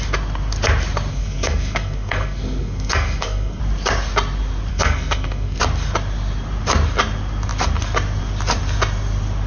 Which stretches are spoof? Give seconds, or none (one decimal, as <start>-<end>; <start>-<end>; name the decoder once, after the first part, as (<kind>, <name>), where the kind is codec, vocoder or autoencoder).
1.1-3.6 (codec, SNAC); 4.7-5.6